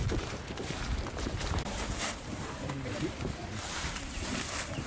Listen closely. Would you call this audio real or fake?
fake